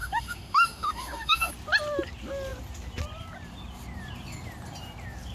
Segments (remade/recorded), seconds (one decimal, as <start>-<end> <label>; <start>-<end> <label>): 0.0-1.5 remade; 1.5-5.3 recorded